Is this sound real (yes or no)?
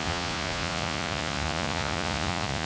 no